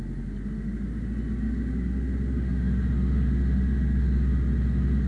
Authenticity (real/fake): real